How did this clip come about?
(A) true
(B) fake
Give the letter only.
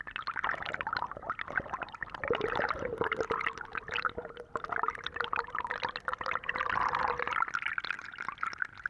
A